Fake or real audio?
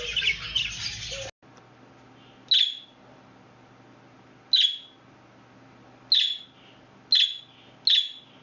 real